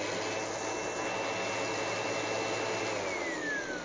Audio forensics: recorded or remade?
recorded